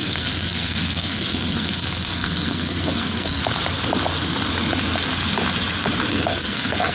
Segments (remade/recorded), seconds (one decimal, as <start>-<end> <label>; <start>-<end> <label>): 0.0-3.4 remade; 3.4-6.1 recorded; 6.1-6.9 remade